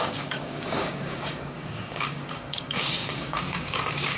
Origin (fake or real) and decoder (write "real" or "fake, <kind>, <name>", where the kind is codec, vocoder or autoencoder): fake, codec, DAC